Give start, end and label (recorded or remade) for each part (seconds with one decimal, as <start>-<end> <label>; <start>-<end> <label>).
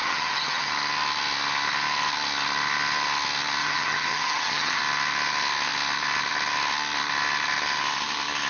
0.0-0.7 remade; 0.7-3.6 recorded; 3.6-4.8 remade; 4.8-8.5 recorded